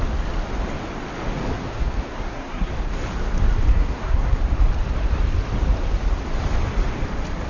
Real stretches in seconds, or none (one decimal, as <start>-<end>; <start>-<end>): 0.0-1.7; 2.7-3.7; 4.4-7.5